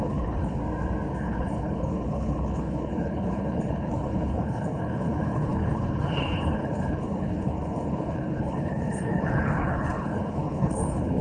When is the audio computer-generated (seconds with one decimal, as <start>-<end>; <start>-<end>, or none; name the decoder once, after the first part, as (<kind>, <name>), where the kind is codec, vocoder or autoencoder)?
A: 0.0-0.6 (codec, HILCodec); 1.2-11.2